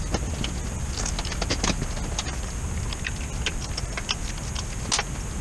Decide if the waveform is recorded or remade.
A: recorded